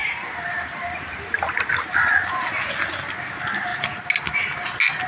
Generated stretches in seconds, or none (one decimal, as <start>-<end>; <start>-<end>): 0.0-2.7